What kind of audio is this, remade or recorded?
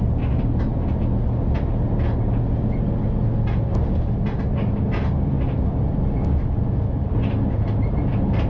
recorded